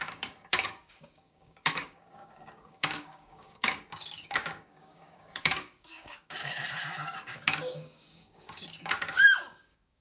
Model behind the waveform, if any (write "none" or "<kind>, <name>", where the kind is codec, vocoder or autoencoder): codec, DAC